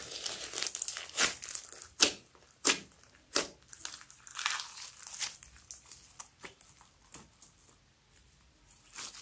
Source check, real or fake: real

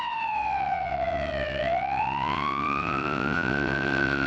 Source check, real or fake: fake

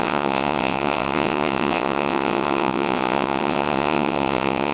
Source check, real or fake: fake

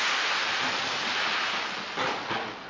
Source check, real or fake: real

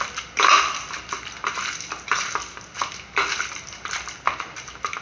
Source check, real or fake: real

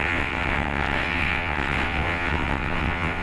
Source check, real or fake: fake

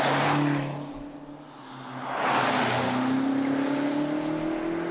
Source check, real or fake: real